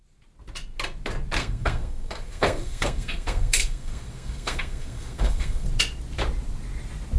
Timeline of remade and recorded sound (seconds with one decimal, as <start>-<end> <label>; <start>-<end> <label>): 0.0-1.4 recorded; 1.4-5.7 remade; 5.7-7.2 recorded